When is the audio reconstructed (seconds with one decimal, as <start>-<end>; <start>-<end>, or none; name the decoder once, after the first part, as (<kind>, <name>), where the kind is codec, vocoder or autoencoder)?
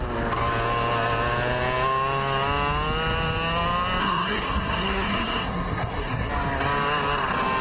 4.0-6.3 (codec, SNAC)